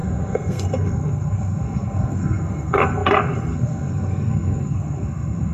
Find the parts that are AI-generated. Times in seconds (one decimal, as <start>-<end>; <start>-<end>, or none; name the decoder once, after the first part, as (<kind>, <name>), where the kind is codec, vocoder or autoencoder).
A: 0.0-5.5 (codec, SNAC)